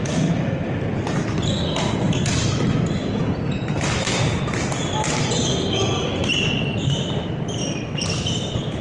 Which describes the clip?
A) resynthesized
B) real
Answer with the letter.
B